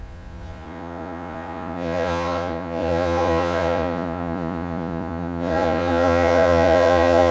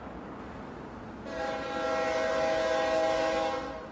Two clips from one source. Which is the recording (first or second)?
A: second